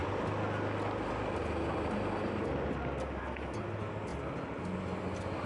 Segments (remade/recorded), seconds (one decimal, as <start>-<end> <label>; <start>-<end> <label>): 0.0-5.5 recorded